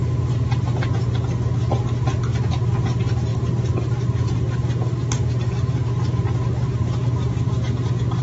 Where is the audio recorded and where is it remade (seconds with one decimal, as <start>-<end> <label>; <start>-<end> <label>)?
0.0-8.2 recorded